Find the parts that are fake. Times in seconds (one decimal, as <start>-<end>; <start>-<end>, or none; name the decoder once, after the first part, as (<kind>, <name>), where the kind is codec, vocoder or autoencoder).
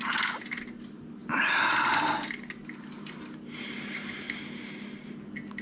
none